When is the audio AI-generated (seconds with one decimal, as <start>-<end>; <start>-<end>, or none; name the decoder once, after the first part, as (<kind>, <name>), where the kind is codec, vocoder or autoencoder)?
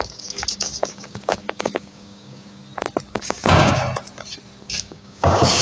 0.0-2.6 (codec, DAC); 3.1-3.8; 4.6-5.6